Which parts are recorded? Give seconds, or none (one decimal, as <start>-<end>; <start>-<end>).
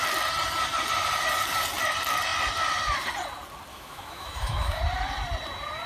0.0-3.7; 4.8-5.9